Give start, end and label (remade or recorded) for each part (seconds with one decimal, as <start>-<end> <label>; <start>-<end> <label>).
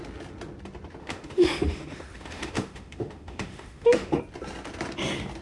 0.0-1.0 recorded; 1.0-4.2 remade; 4.2-5.4 recorded